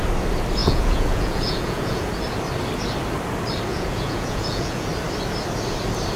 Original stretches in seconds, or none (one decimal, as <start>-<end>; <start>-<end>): 0.0-0.6; 2.1-3.7; 4.9-6.2